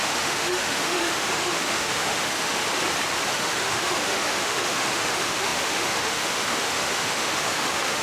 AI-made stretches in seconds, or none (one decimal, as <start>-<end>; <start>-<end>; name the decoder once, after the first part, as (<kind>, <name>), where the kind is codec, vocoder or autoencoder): 0.0-2.6 (autoencoder, DAC-VAE); 3.3-8.0